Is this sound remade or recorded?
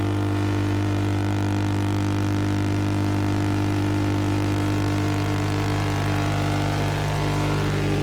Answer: remade